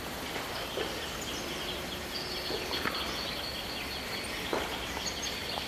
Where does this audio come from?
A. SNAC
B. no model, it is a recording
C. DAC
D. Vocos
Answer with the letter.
B